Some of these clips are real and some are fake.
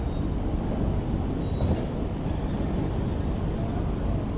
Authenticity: real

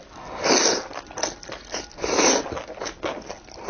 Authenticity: real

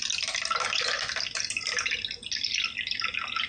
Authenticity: real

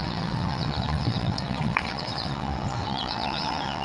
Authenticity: fake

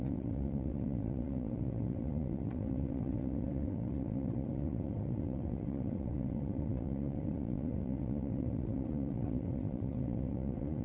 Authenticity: fake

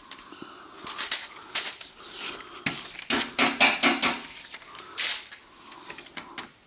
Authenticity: real